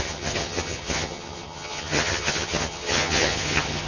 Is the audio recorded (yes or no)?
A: no